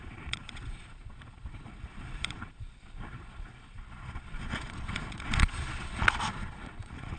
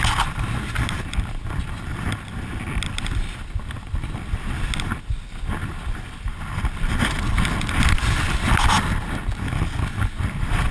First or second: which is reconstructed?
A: first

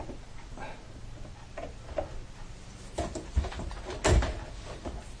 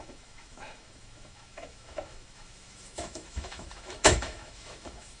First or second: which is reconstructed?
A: second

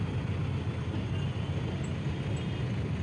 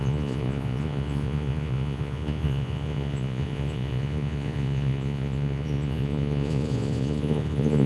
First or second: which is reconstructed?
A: second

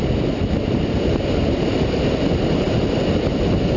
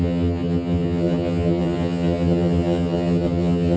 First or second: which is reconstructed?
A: second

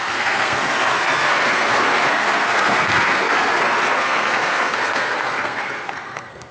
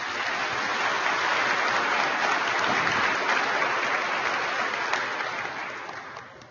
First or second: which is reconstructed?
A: first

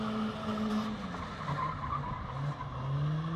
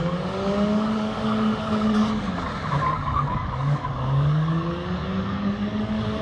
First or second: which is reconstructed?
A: second